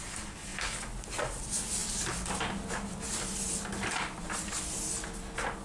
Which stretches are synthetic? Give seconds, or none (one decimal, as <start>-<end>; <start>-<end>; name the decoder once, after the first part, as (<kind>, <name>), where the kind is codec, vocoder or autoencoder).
none